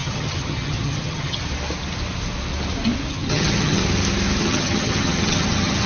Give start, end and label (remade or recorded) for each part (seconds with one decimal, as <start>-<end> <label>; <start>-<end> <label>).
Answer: 0.0-1.4 remade; 1.4-3.1 recorded; 3.1-3.8 remade; 3.8-4.4 recorded; 4.4-5.9 remade